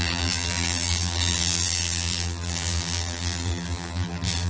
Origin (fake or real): fake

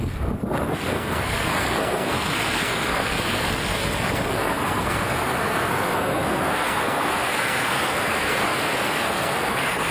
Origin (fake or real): fake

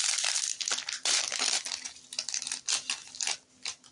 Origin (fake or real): real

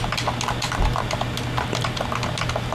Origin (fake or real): real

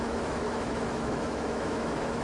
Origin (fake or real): fake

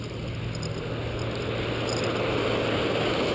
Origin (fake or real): real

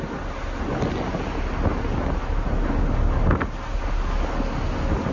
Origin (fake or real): real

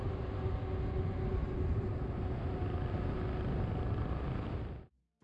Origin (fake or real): real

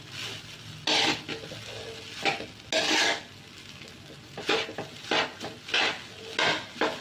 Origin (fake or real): real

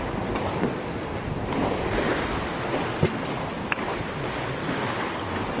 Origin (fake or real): real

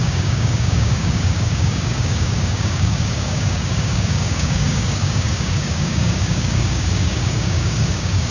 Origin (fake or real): fake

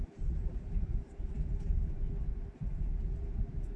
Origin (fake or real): real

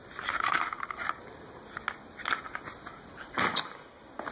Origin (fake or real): real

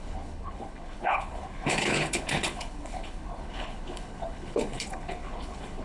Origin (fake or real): fake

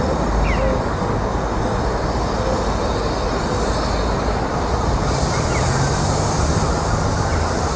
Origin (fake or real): real